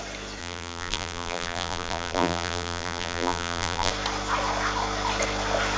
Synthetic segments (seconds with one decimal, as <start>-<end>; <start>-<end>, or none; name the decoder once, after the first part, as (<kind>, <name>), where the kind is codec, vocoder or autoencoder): 0.4-3.9 (vocoder, BigVGAN v2)